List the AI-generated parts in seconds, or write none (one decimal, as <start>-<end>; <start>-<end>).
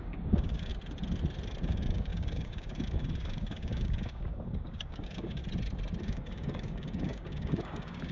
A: 0.0-0.7; 1.6-5.4; 6.0-8.1